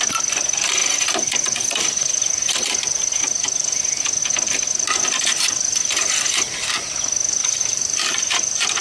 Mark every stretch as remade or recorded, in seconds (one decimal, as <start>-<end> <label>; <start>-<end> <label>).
0.0-7.4 recorded; 7.4-8.2 remade; 8.2-8.8 recorded